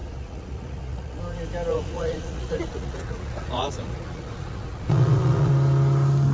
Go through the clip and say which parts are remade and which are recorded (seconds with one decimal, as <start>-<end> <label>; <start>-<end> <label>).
0.0-1.2 remade; 1.2-1.7 recorded; 1.7-5.5 remade; 5.5-6.3 recorded